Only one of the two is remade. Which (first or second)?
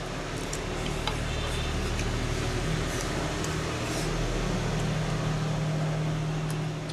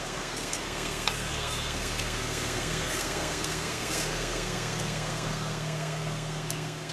second